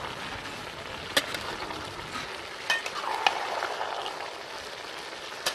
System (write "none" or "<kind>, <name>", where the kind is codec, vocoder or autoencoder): none